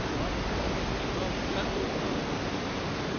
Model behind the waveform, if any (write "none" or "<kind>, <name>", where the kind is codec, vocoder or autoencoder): none